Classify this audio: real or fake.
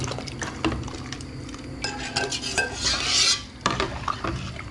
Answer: real